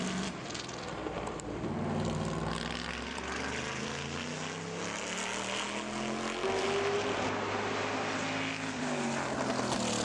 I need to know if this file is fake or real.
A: real